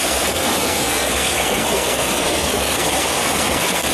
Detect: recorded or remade remade